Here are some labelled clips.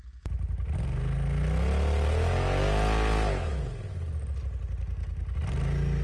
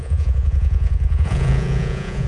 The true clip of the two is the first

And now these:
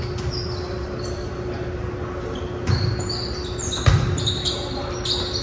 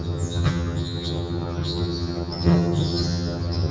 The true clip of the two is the first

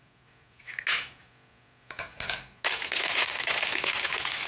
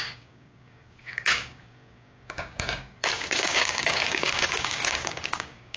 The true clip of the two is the first